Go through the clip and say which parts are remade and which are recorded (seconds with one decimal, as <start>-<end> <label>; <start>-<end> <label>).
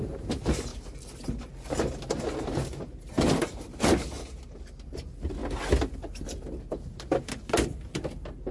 0.0-8.5 recorded